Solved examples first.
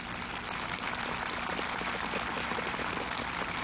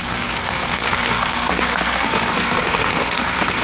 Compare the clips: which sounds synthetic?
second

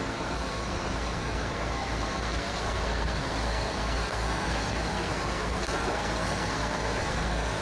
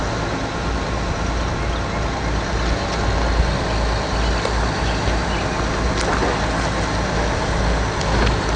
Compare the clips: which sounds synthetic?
first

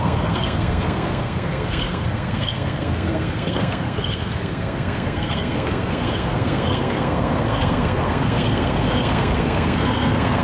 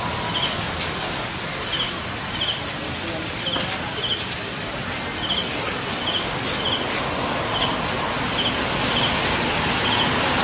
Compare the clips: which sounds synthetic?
first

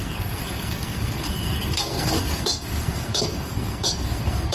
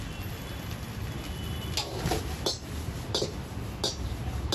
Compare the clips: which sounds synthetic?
first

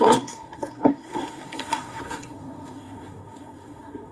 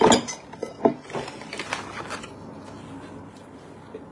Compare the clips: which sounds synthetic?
first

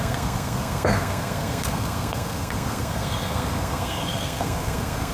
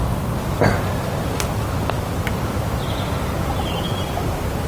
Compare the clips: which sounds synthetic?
first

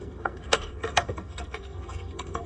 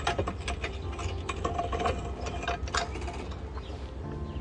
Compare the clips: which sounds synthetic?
first